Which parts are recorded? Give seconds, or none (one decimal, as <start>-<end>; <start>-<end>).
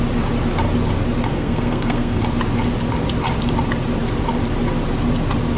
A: 0.0-1.3; 2.2-5.6